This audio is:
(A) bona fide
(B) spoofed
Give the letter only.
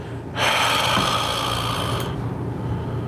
A